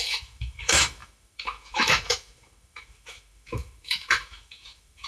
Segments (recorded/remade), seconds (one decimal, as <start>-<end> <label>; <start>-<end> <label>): 0.0-5.1 remade